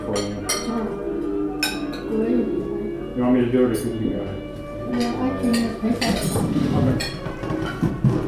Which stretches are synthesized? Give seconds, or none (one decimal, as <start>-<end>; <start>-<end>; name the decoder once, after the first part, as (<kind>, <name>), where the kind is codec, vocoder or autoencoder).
5.5-7.9 (vocoder, BigVGAN v2)